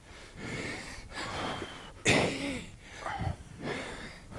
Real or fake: real